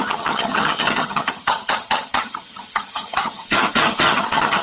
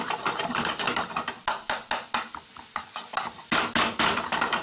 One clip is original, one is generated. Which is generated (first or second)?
first